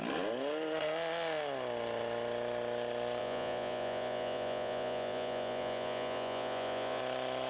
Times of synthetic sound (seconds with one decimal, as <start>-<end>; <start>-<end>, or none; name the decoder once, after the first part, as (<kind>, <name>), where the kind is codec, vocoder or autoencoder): 3.2-7.0 (vocoder, Vocos)